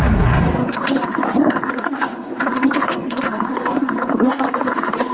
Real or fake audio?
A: fake